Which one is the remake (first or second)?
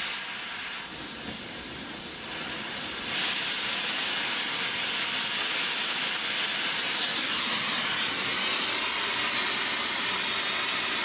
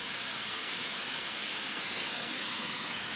second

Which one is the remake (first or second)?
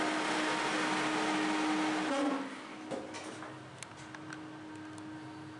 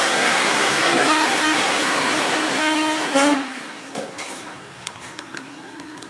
second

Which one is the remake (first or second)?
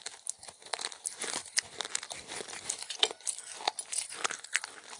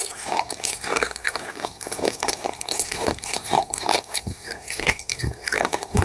second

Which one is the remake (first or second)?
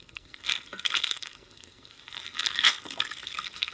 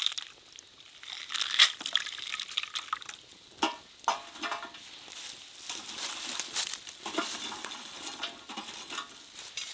first